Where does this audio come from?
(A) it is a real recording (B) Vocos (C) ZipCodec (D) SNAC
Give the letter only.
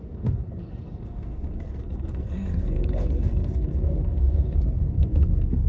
D